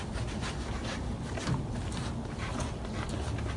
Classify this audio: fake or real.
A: real